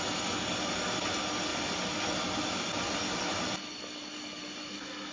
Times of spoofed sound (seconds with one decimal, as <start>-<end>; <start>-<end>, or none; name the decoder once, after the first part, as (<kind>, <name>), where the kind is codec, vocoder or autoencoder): 1.5-3.5 (vocoder, BigVGAN v2)